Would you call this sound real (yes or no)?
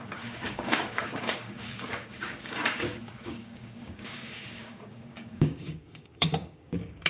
no